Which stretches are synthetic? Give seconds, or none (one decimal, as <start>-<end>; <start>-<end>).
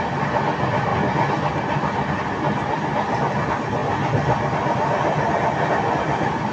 none